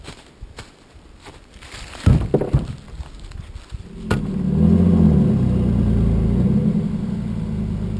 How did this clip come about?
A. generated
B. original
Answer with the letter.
B